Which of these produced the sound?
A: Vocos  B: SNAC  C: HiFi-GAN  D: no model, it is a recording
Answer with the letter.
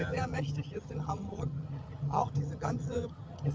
C